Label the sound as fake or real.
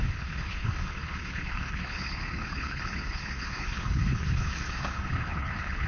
fake